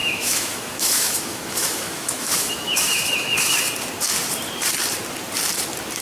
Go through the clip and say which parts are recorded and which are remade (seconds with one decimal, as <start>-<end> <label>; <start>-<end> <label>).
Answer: 0.0-3.6 remade; 3.6-6.0 recorded

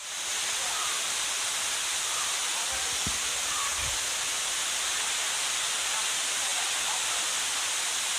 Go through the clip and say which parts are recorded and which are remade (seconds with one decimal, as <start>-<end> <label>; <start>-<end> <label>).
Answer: 0.0-8.2 recorded

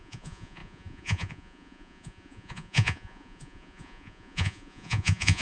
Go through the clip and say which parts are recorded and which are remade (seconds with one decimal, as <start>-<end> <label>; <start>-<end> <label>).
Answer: 0.0-5.4 remade

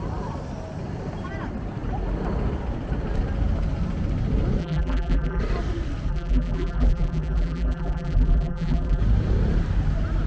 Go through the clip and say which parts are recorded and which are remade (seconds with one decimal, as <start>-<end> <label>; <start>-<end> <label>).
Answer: 0.0-4.6 recorded; 4.6-5.4 remade; 5.4-6.1 recorded; 6.1-9.0 remade; 9.0-10.3 recorded

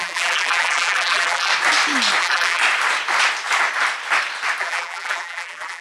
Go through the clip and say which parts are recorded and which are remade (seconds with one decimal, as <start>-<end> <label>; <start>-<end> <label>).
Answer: 0.0-1.5 remade; 1.5-2.2 recorded; 2.2-2.6 remade; 2.6-4.6 recorded; 4.6-5.8 remade

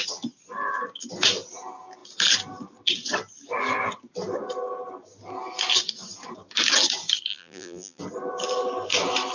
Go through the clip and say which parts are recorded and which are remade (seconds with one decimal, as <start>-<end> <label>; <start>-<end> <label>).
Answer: 0.0-7.3 recorded; 7.3-8.0 remade; 8.0-9.3 recorded

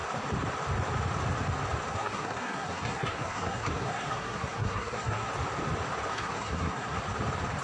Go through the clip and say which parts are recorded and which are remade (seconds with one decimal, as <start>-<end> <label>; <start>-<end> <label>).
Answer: 0.0-1.9 recorded; 1.9-5.3 remade; 5.3-6.1 recorded; 6.1-7.0 remade; 7.0-7.6 recorded

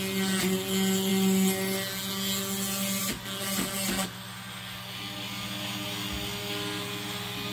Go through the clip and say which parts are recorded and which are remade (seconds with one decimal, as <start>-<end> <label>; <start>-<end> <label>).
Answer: 0.0-7.5 recorded